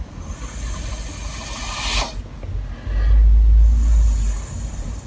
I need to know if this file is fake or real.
real